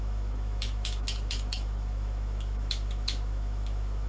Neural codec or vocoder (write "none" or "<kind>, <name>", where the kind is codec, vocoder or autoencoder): autoencoder, DAC-VAE